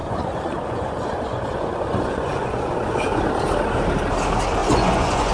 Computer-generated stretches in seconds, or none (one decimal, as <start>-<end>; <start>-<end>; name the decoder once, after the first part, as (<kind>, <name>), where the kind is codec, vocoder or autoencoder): 0.0-3.2 (vocoder, Vocos); 4.6-5.3